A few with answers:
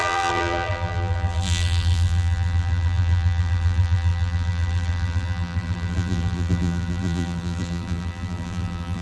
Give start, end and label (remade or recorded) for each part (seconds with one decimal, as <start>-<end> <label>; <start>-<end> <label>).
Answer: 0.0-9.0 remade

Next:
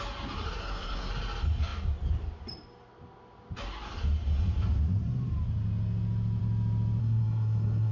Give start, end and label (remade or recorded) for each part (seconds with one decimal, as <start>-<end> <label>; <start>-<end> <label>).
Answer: 0.0-0.6 recorded; 0.6-1.1 remade; 1.1-7.0 recorded; 7.0-7.9 remade

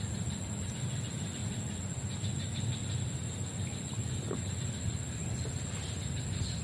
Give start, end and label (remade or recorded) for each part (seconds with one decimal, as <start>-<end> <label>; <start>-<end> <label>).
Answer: 0.0-6.6 recorded

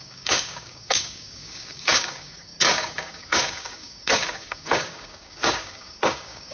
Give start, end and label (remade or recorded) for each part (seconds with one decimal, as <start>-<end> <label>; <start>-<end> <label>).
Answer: 0.0-6.5 remade

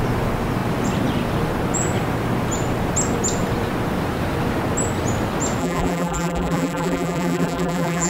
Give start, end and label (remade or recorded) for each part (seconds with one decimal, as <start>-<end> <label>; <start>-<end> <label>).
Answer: 0.0-5.6 recorded; 5.6-8.1 remade

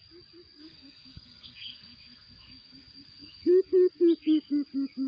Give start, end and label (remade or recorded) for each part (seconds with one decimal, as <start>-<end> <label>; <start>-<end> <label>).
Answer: 0.0-0.6 recorded; 0.6-3.5 remade; 3.5-5.1 recorded

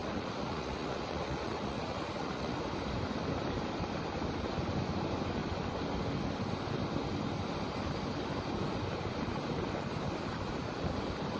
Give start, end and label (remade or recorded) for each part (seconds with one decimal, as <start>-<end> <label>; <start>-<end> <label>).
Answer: 0.0-2.6 remade; 2.6-11.4 recorded